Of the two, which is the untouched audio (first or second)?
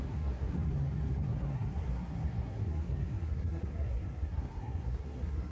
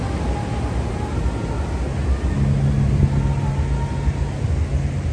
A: second